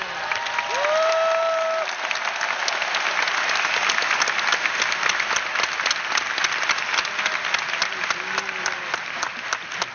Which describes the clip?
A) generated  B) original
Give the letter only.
B